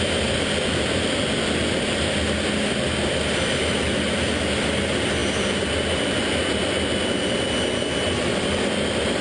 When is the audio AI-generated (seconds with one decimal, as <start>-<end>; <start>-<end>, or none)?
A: none